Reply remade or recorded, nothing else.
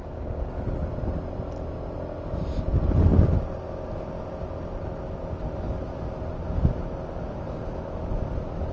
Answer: recorded